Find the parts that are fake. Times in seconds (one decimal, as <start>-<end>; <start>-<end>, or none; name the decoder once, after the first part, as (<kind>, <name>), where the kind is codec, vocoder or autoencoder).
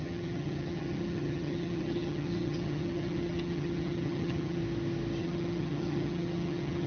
0.0-4.6 (vocoder, HiFi-GAN); 5.2-6.9